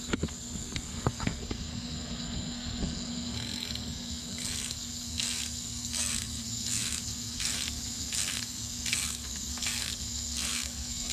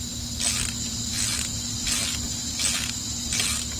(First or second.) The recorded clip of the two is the second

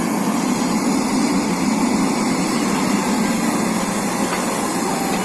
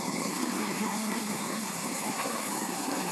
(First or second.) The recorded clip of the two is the first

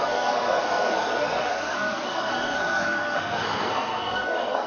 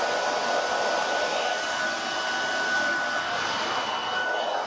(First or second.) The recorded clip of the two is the second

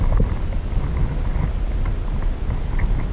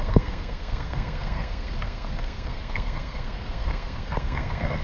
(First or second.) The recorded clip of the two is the first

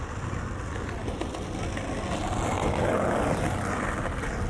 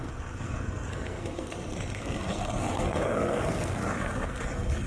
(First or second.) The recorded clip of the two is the first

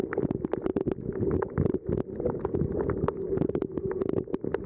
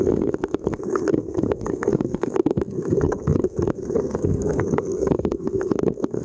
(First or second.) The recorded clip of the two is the first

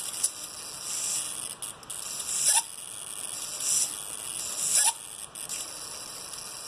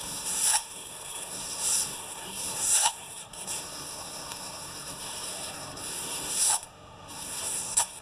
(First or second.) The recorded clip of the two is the first